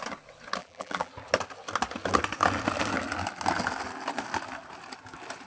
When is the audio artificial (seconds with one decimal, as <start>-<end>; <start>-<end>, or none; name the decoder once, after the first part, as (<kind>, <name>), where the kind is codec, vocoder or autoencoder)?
0.6-1.1 (vocoder, BigVGAN v2)